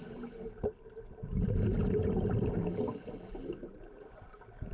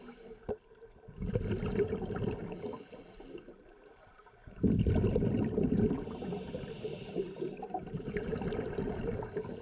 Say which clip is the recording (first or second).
first